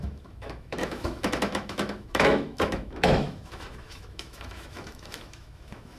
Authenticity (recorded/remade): remade